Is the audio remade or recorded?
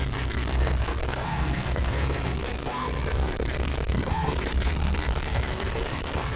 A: remade